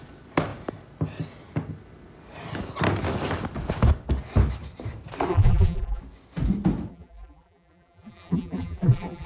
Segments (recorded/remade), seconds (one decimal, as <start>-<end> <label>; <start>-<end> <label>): 0.0-5.3 recorded; 5.3-6.0 remade; 6.0-6.9 recorded; 6.9-9.3 remade